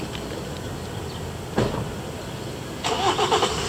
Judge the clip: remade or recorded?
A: recorded